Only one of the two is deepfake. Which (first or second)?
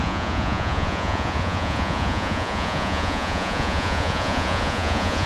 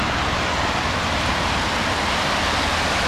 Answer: first